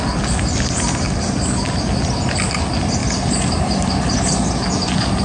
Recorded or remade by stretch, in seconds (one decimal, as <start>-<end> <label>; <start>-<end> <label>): 0.0-5.2 recorded